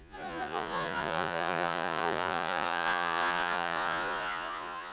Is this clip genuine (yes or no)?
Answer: no